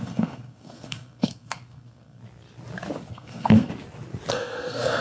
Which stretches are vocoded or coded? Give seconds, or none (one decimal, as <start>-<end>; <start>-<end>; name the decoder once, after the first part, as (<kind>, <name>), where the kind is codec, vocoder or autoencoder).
0.0-2.2 (codec, SNAC); 3.1-3.7; 4.3-5.0